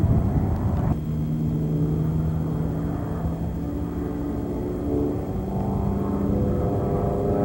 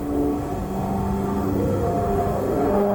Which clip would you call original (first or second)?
first